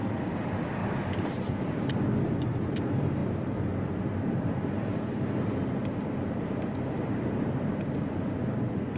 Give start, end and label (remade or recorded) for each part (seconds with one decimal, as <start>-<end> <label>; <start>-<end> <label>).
0.0-0.8 recorded; 0.8-1.9 remade; 1.9-7.0 recorded; 7.0-7.7 remade; 7.7-9.0 recorded